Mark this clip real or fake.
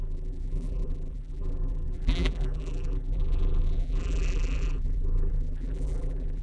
fake